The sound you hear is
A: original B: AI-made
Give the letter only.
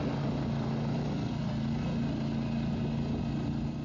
A